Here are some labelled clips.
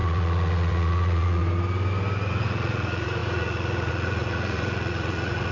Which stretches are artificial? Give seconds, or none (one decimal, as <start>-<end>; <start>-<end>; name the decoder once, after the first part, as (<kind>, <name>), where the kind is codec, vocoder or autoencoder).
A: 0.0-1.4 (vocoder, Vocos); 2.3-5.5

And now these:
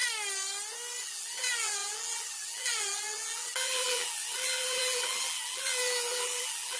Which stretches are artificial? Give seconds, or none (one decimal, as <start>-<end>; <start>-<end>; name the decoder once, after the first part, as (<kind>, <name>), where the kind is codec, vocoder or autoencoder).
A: 1.0-6.8 (vocoder, BigVGAN v2)

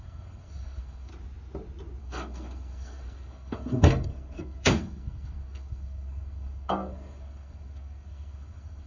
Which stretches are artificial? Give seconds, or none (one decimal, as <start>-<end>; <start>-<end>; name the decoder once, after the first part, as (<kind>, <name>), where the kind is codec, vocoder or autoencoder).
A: 0.0-1.1 (codec, SNAC); 2.0-8.9